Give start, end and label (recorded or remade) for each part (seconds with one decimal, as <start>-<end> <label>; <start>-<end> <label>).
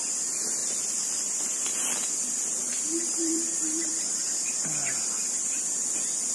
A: 0.0-0.6 recorded; 0.6-4.4 remade; 4.4-6.3 recorded